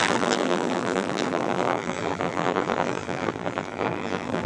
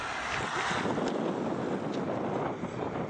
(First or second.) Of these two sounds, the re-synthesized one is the first